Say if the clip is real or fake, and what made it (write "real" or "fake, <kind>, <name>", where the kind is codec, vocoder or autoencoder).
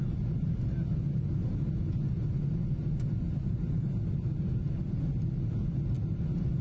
real